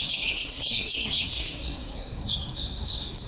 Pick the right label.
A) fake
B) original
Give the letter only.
A